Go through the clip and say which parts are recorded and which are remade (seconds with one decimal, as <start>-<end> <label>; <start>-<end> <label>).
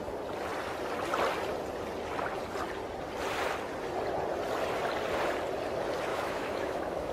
0.0-6.1 recorded; 6.1-7.1 remade